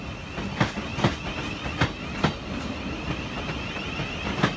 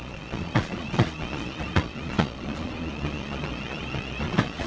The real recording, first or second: first